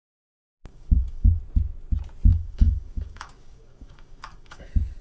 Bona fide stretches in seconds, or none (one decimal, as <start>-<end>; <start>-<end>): 0.0-0.7; 1.4-2.3